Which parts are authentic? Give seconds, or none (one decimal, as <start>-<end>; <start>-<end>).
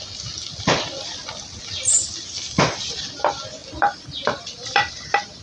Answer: 0.0-0.4; 3.1-3.6; 4.9-5.4